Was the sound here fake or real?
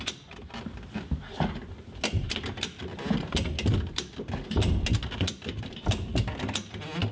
real